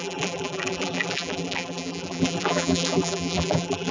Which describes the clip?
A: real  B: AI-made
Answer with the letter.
B